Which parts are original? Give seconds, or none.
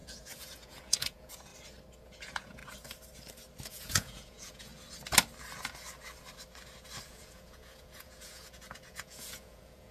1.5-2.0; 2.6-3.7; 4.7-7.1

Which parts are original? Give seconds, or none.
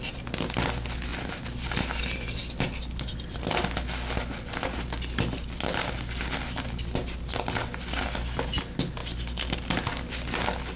0.0-10.8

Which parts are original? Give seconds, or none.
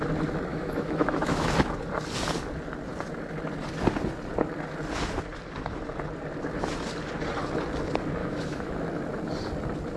0.0-0.5; 1.5-8.2; 8.7-10.0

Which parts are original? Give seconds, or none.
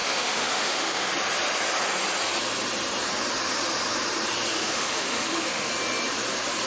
1.1-4.5; 5.7-6.7